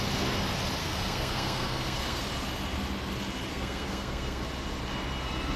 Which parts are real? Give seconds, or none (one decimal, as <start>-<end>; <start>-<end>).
0.0-0.8; 2.2-3.5; 4.4-5.6